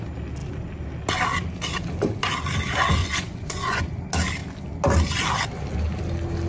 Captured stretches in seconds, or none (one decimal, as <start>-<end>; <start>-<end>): 0.0-3.0; 3.8-6.5